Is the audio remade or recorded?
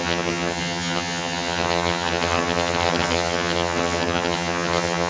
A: remade